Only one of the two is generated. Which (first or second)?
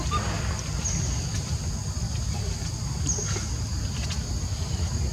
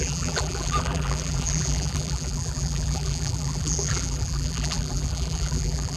second